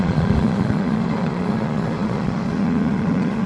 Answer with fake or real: fake